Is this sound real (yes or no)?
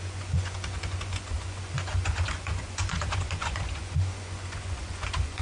no